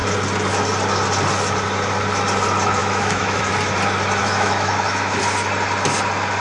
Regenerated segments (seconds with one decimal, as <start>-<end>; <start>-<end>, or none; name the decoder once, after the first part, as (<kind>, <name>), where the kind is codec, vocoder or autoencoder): 2.8-3.4 (autoencoder, DAC-VAE); 4.2-5.2

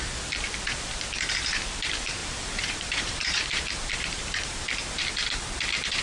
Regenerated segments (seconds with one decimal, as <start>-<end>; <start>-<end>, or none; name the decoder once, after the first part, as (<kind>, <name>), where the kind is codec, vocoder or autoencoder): 2.2-4.7 (vocoder, BigVGAN v2)

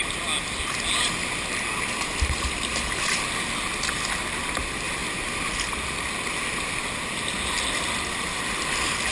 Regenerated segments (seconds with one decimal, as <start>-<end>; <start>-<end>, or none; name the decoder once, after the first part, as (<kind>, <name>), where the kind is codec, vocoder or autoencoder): none

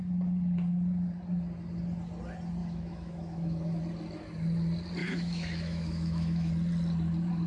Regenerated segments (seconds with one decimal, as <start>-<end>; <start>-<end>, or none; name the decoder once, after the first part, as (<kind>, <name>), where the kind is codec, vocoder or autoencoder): 2.6-3.8 (autoencoder, DAC-VAE); 5.0-6.5

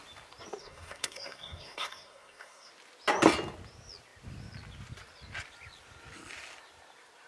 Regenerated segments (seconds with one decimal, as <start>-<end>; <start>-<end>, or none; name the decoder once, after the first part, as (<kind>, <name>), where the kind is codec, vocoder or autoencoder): 0.6-2.7 (codec, SNAC)